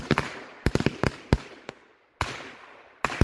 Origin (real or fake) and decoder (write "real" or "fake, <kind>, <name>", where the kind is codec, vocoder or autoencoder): real